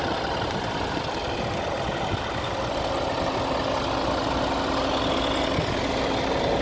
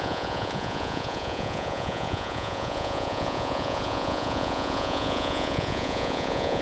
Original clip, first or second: first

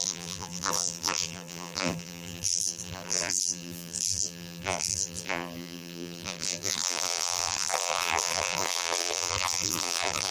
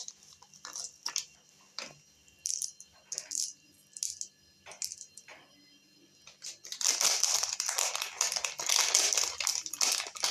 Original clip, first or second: second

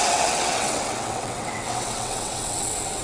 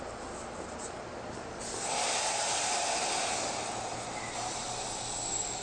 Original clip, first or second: second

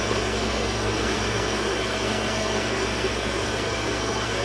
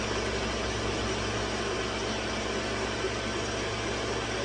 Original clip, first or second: second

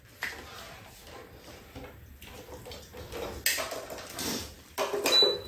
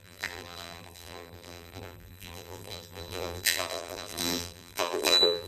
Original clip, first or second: first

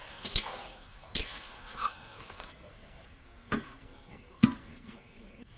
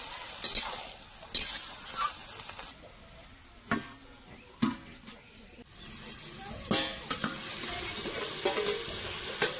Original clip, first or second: second